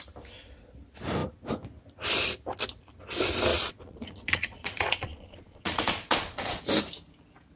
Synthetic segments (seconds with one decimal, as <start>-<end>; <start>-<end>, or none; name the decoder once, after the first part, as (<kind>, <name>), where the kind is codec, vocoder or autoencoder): 3.5-6.6 (vocoder, Vocos)